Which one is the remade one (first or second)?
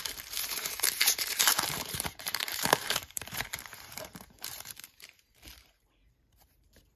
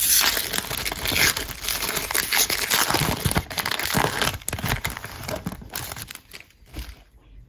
first